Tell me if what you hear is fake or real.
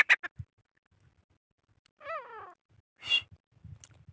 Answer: real